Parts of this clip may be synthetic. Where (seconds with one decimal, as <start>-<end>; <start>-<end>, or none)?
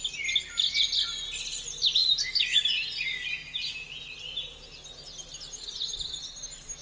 none